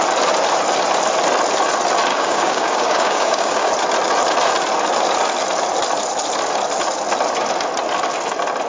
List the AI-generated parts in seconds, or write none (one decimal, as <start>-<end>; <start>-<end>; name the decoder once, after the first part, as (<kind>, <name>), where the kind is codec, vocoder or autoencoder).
2.1-3.7 (codec, DAC)